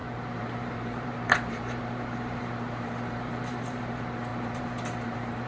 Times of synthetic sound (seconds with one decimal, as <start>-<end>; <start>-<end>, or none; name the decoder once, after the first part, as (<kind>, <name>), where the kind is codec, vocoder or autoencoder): 0.0-5.5 (vocoder, BigVGAN v2)